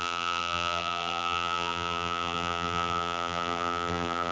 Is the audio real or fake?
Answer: fake